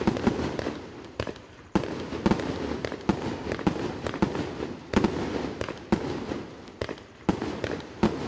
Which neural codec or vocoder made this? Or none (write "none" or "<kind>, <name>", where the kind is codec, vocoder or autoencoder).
none